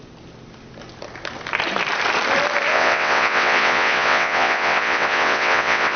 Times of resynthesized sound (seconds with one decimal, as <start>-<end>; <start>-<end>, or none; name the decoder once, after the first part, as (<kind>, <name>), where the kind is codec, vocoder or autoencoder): 2.7-6.0 (vocoder, WaveNeXt)